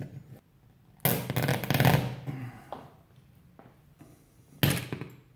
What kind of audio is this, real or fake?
real